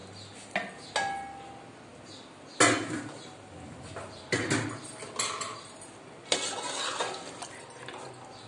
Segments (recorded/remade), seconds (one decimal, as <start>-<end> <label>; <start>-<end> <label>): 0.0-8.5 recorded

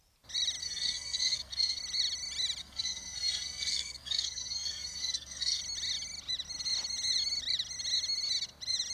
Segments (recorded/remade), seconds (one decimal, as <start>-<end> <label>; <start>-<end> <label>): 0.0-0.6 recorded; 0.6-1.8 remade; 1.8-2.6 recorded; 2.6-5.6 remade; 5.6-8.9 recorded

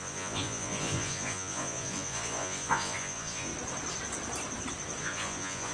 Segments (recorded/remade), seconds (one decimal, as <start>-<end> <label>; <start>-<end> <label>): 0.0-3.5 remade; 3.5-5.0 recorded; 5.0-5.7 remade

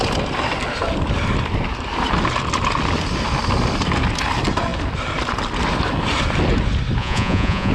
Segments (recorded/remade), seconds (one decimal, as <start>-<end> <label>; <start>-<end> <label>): 0.0-7.0 recorded; 7.0-7.7 remade